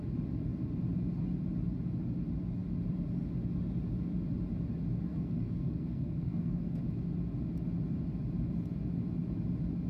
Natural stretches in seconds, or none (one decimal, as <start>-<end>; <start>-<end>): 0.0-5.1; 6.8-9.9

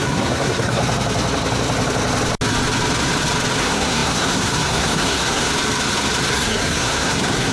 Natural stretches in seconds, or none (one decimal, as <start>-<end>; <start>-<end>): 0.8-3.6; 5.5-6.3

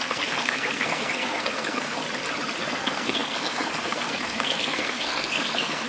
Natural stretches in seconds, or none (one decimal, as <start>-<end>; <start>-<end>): 2.0-2.6

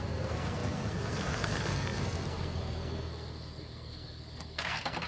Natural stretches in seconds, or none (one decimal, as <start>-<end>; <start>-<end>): none